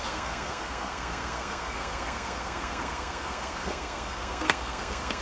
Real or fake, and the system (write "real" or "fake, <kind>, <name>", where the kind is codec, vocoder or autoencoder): fake, codec, SNAC